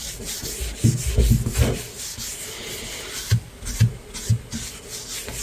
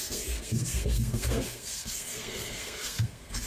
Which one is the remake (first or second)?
second